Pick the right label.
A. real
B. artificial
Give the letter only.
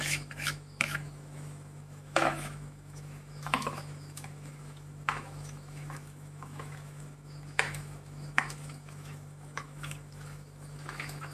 B